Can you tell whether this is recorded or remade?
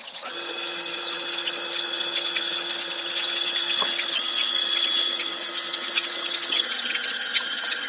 remade